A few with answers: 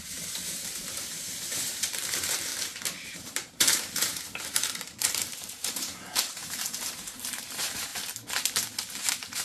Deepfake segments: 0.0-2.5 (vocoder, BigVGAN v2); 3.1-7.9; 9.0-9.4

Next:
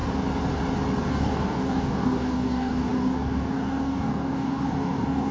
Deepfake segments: 1.1-5.3 (codec, DAC)

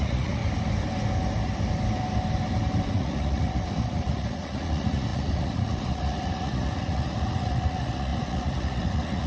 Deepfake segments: 0.0-0.4 (vocoder, Vocos); 2.9-9.3

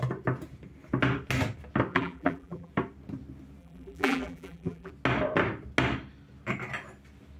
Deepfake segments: 1.9-2.7 (vocoder, BigVGAN v2); 3.6-4.9

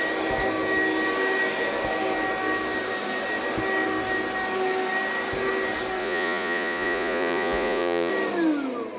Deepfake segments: 6.0-8.1 (vocoder, Vocos)

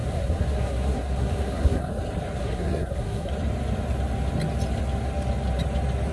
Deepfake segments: 0.0-1.9 (codec, SNAC); 2.4-3.3

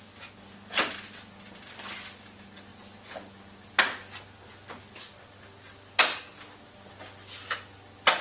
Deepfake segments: none

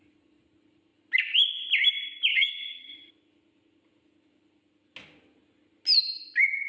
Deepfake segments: 2.3-3.1 (vocoder, HiFi-GAN)